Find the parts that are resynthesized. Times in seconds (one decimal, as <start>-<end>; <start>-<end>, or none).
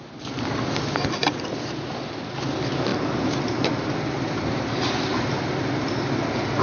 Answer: 2.9-4.4; 5.1-5.9